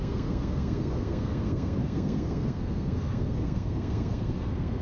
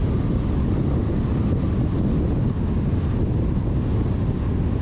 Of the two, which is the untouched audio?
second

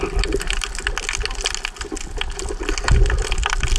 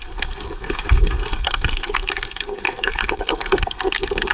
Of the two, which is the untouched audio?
first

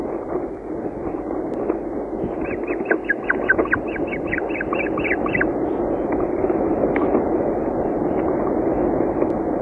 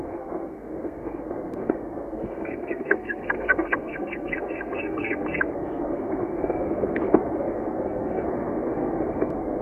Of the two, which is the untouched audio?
first